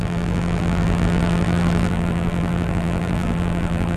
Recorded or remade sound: remade